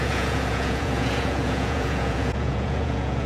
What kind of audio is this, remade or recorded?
remade